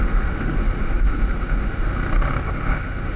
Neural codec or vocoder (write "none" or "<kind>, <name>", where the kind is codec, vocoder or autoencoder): autoencoder, DAC-VAE